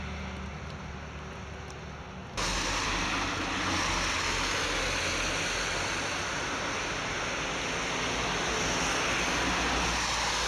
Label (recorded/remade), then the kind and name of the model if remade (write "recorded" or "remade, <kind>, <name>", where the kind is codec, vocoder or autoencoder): recorded